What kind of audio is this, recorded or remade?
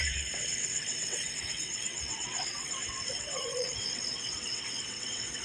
remade